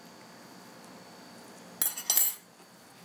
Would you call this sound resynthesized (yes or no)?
no